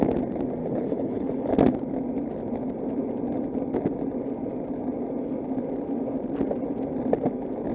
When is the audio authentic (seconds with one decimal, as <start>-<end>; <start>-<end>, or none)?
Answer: 0.0-0.6; 1.5-7.7

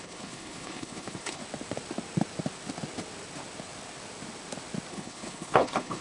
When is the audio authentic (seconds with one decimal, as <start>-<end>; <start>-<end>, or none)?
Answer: 1.4-4.9

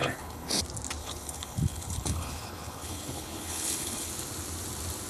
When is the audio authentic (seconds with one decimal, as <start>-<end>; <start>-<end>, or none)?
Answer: 0.6-1.0; 4.1-5.1

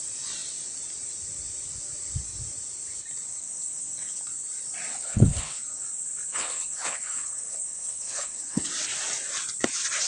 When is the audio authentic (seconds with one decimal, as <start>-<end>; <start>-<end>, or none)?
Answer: 0.0-3.3; 4.2-4.9; 5.8-6.3; 8.7-10.1

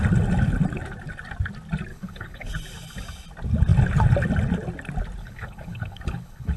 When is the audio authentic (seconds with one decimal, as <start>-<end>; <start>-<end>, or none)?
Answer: 0.0-1.9; 2.5-5.2

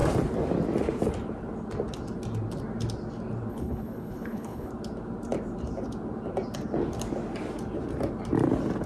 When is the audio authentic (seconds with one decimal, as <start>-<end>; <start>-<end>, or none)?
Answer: 0.0-3.5; 4.7-8.9

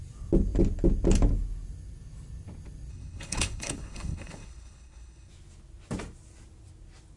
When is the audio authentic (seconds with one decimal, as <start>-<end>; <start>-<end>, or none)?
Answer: 0.0-2.9; 5.3-7.2

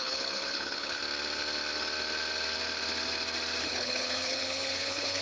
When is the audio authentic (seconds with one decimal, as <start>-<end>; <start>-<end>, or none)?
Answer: 1.0-3.6